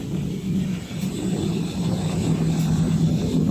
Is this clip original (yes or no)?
yes